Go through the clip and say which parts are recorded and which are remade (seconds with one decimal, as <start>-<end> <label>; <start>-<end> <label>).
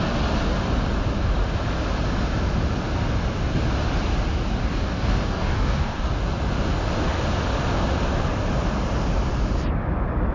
0.0-4.6 recorded; 4.6-6.1 remade; 6.1-10.3 recorded